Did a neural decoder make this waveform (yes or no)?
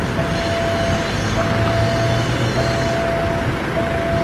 no